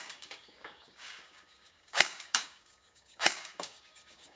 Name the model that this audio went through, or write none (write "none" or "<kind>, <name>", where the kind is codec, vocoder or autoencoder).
codec, DAC